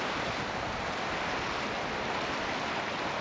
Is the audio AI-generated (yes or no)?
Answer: no